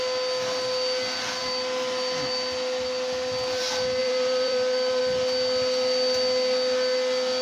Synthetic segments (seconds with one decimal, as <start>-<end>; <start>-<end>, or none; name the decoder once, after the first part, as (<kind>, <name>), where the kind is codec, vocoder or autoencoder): 4.0-5.0 (vocoder, BigVGAN v2)